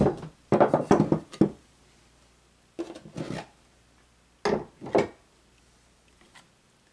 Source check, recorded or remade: recorded